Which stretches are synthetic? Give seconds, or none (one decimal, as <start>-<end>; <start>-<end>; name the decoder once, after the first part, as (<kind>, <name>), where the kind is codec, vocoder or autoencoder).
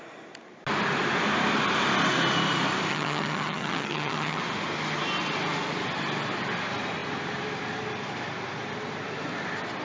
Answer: 2.9-4.4 (vocoder, HiFi-GAN)